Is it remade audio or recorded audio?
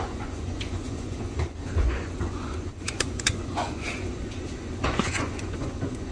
remade